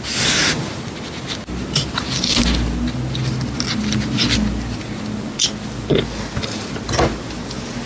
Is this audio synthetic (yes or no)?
no